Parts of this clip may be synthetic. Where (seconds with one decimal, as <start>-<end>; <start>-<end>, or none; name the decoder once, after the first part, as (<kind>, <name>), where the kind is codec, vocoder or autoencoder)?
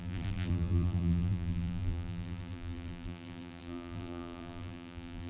0.0-5.3 (vocoder, BigVGAN v2)